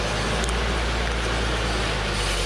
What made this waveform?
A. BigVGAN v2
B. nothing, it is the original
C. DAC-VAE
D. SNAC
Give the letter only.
B